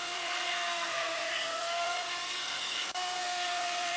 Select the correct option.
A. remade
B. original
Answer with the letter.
A